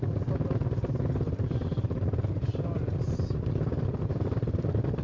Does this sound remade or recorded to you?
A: recorded